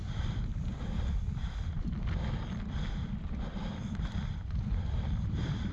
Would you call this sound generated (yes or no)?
yes